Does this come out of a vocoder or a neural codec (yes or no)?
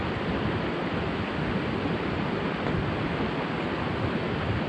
no